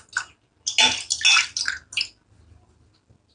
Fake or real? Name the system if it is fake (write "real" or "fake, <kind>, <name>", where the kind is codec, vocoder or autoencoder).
real